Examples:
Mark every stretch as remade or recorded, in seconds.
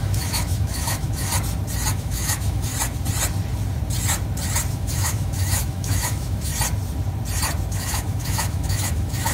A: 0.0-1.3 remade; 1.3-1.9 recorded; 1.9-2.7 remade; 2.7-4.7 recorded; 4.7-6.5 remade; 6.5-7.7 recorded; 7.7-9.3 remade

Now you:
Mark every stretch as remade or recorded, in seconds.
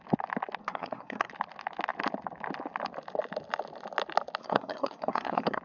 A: 0.0-0.6 recorded; 0.6-1.3 remade; 1.3-4.4 recorded; 4.4-5.6 remade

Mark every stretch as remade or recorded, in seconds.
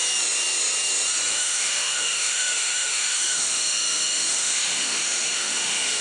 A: 0.0-1.3 recorded; 1.3-6.0 remade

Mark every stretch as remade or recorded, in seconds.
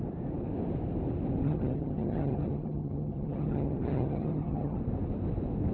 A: 0.0-1.4 recorded; 1.4-4.8 remade; 4.8-5.7 recorded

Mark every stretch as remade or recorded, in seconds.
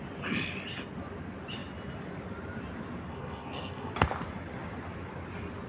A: 0.0-3.1 recorded; 3.1-3.9 remade; 3.9-5.7 recorded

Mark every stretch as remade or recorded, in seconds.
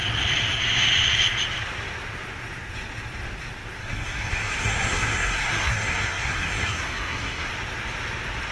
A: 0.0-3.8 recorded; 3.8-7.5 remade; 7.5-8.5 recorded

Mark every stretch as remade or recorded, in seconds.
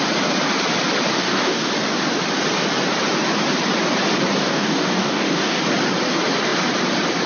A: 0.0-1.2 recorded; 1.2-1.7 remade; 1.7-4.4 recorded; 4.4-5.6 remade; 5.6-7.3 recorded